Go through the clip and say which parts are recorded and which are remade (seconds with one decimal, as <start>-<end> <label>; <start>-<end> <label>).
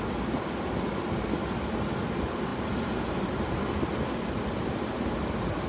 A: 0.0-5.7 recorded